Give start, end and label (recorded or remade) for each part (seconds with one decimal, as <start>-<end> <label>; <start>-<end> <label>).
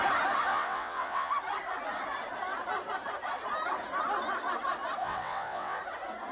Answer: 0.0-0.5 recorded; 0.5-1.3 remade; 1.3-5.0 recorded; 5.0-5.8 remade; 5.8-6.3 recorded